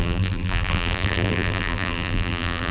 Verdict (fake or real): fake